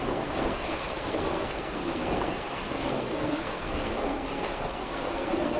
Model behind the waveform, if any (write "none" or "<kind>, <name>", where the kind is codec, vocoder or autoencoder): codec, SNAC